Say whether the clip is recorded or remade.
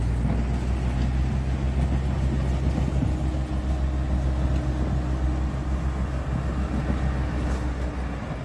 recorded